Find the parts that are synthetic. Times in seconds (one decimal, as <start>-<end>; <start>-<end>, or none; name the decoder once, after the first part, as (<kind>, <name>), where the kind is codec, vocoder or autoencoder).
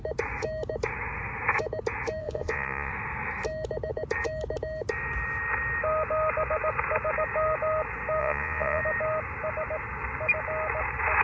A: 2.2-2.9 (vocoder, Vocos); 8.2-8.8